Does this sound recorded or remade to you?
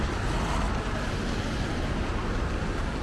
recorded